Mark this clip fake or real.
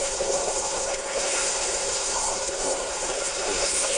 fake